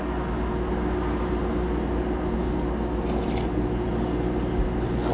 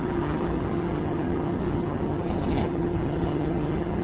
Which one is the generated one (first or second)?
second